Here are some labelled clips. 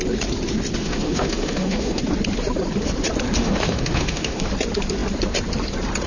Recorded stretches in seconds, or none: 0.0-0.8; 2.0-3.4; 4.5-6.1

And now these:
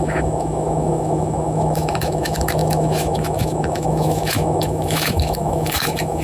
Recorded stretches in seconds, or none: none

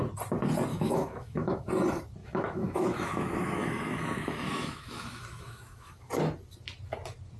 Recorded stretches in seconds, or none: 0.0-0.7; 1.7-2.2; 6.1-7.4

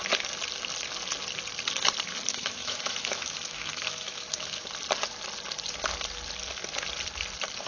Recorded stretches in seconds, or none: 0.0-2.3; 4.7-7.7

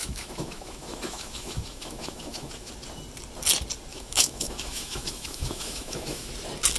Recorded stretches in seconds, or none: 2.7-3.9; 6.3-6.8

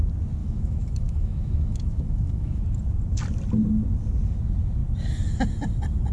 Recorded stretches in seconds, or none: 0.0-0.4; 2.6-6.1

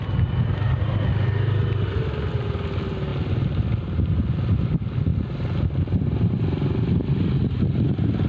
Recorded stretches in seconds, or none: 0.0-8.3